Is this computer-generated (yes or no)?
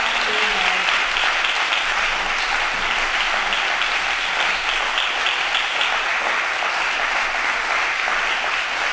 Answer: no